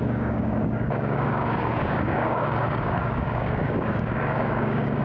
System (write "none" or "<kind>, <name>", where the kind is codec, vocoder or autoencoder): codec, DAC